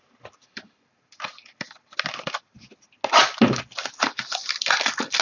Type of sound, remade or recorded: recorded